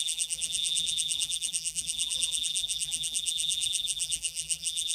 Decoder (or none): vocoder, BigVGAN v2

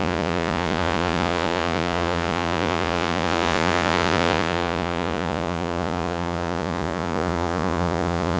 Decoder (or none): vocoder, Vocos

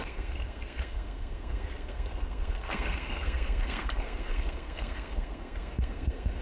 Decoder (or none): codec, SNAC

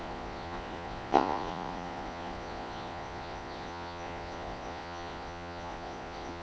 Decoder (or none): vocoder, Vocos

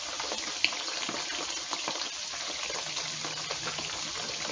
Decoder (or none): none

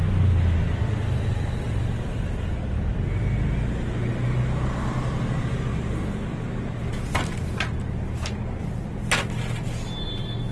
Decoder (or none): none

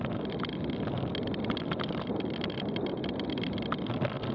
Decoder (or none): none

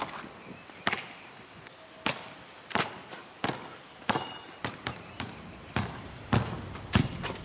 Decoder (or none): none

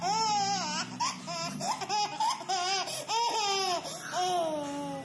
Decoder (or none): none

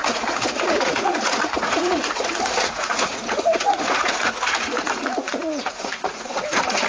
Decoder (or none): vocoder, Vocos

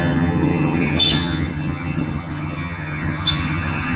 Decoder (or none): vocoder, HiFi-GAN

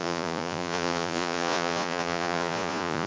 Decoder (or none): vocoder, Vocos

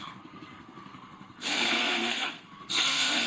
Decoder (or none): codec, SNAC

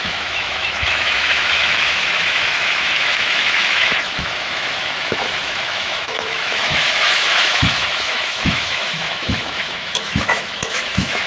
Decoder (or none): autoencoder, DAC-VAE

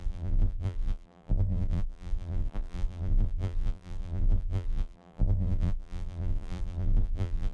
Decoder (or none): vocoder, BigVGAN v2